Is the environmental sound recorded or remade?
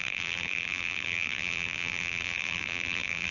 remade